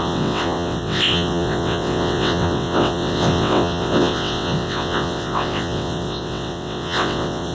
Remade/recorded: remade